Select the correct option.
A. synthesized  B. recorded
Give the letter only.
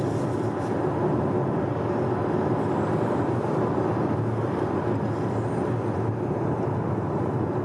B